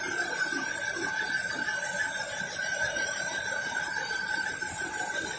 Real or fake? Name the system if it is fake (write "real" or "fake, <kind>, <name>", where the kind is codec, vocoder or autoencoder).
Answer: real